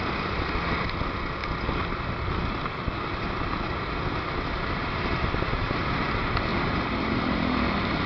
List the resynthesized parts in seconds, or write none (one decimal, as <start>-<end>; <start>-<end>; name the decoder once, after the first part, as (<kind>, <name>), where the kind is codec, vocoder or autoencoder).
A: none